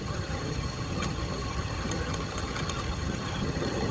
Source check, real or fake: fake